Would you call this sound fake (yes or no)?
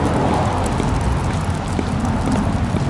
no